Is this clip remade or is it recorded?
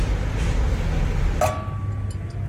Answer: recorded